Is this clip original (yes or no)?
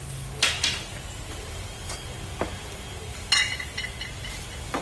yes